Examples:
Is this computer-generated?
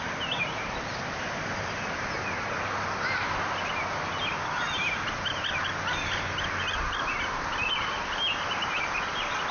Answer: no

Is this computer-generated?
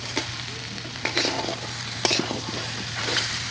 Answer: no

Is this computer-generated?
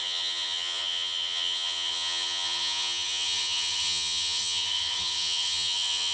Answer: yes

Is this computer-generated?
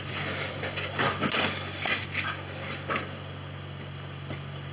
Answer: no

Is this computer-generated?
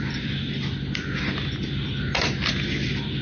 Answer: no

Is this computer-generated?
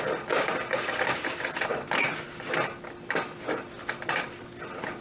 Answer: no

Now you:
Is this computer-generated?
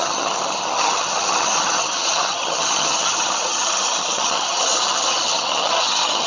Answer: yes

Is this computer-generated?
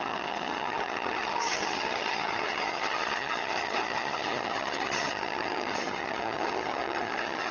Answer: yes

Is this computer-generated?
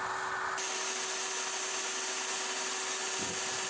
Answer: no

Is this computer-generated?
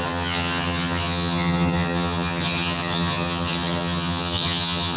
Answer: yes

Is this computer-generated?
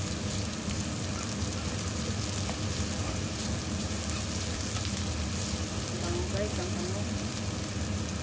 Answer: no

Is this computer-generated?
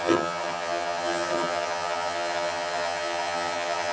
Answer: yes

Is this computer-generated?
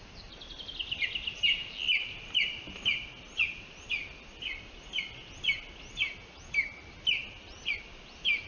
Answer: no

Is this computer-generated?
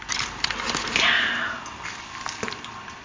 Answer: no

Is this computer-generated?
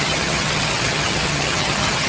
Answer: yes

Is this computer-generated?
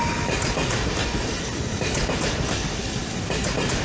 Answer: no